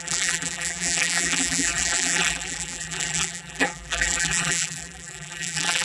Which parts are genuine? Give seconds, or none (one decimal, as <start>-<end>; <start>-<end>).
none